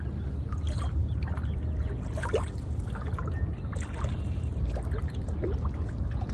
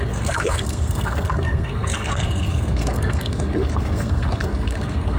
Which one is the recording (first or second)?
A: first